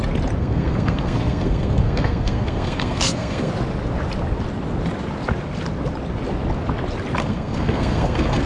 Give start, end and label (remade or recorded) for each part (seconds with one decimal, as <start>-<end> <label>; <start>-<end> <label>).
0.0-0.4 recorded; 0.4-3.5 remade; 3.5-7.2 recorded; 7.2-8.5 remade